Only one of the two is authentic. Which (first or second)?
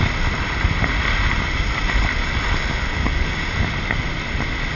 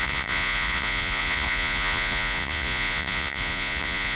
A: first